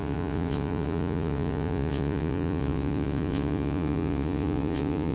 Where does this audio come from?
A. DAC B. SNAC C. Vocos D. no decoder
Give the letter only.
C